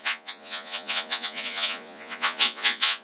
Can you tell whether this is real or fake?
fake